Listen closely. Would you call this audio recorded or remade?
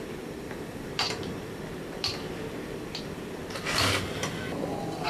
recorded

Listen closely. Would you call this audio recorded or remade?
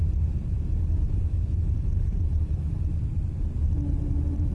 remade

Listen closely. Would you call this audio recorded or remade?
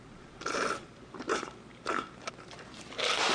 remade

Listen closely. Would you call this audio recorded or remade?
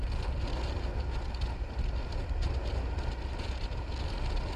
recorded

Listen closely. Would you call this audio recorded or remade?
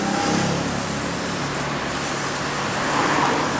recorded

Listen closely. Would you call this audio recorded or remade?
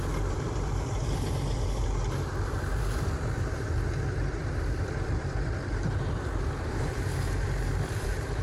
remade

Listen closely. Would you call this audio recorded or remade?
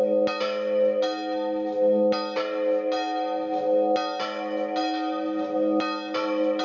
recorded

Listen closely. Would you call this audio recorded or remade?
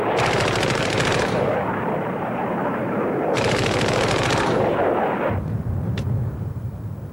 remade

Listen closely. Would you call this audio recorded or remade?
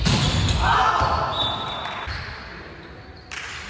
remade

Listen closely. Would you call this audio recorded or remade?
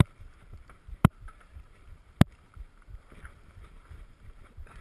remade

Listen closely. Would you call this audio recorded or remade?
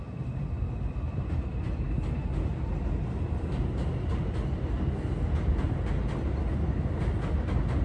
recorded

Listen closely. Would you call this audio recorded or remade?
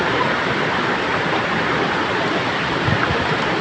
remade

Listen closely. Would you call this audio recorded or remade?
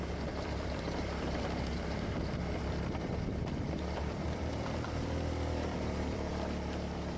remade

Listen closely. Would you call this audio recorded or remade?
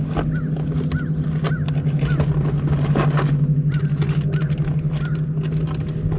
recorded